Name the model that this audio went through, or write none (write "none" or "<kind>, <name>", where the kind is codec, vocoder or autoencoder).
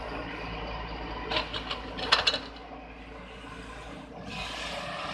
none